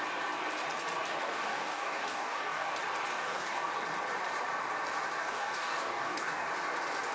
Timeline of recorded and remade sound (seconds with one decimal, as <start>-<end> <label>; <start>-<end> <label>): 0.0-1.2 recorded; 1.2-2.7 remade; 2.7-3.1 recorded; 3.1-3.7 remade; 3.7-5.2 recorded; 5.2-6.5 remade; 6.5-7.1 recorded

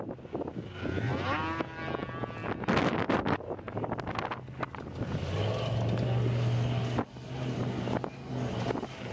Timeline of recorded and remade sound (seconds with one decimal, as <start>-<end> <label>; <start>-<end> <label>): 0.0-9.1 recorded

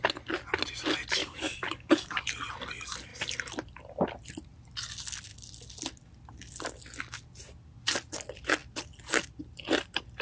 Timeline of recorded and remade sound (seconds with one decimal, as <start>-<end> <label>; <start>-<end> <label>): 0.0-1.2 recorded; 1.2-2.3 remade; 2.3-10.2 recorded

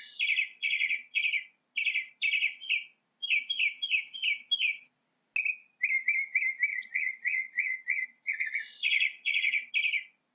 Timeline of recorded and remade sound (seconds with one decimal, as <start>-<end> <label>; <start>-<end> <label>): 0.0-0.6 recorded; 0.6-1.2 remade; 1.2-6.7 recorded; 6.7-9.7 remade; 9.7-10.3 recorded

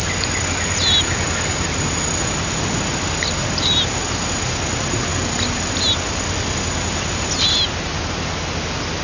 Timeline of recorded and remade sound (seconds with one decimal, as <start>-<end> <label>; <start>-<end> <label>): 0.0-5.1 recorded; 5.1-5.7 remade; 5.7-9.0 recorded

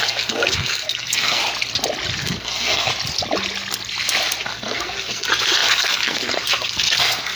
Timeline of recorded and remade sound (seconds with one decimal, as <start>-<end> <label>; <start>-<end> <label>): 0.0-1.4 remade; 1.4-2.1 recorded; 2.1-2.9 remade; 2.9-4.4 recorded; 4.4-7.4 remade